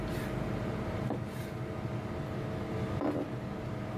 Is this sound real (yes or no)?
yes